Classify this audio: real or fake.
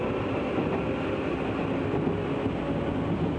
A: real